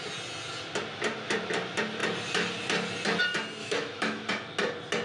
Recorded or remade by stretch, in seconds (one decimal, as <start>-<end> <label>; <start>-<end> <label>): 0.0-3.6 recorded; 3.6-4.3 remade; 4.3-5.0 recorded